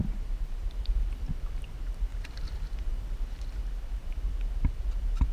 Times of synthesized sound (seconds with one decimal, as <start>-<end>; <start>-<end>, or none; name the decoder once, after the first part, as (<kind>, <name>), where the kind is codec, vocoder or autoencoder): 0.0-0.7 (vocoder, BigVGAN v2); 2.1-3.6